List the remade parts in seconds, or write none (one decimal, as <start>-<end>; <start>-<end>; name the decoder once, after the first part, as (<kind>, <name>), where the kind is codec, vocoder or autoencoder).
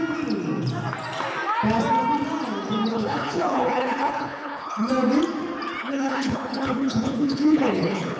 2.9-4.9 (codec, HILCodec); 5.8-8.2